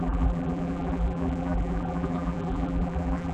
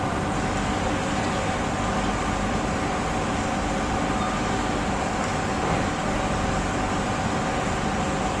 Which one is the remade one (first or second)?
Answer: first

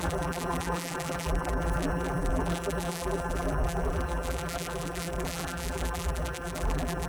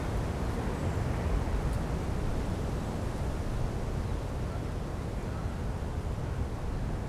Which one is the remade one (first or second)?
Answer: first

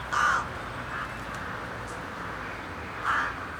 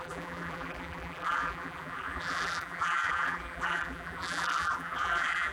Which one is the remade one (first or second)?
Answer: second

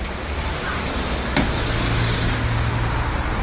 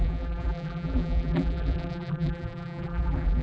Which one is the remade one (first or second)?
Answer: second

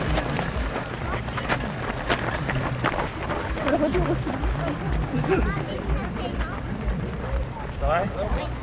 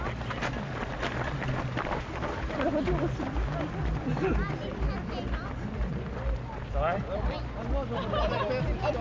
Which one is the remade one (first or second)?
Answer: first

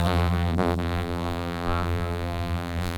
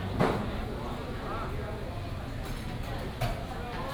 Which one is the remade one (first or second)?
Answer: first